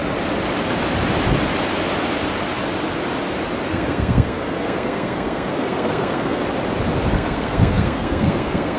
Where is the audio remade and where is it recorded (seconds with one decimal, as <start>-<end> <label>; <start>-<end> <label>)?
0.0-3.7 recorded; 3.7-6.4 remade; 6.4-7.1 recorded; 7.1-8.8 remade